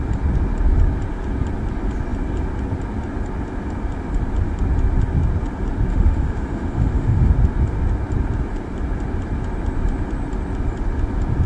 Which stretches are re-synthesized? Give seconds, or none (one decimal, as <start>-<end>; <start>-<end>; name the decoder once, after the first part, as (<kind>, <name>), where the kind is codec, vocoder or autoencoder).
5.9-7.3 (autoencoder, DAC-VAE)